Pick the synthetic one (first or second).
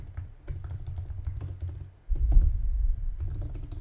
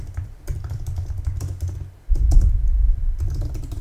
second